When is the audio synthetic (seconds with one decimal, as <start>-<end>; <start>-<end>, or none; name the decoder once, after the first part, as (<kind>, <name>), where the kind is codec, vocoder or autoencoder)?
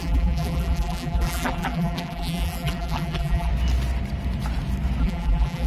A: 0.0-3.5 (vocoder, BigVGAN v2); 5.0-5.7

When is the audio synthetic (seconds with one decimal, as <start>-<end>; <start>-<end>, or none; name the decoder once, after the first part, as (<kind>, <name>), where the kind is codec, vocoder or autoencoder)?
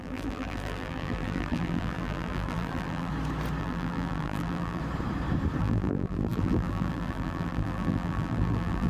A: 0.0-3.1 (vocoder, BigVGAN v2); 3.6-4.8; 5.6-8.9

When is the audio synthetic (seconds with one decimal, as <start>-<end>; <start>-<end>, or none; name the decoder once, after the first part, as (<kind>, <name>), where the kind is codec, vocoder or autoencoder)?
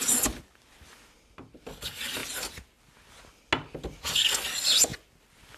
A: none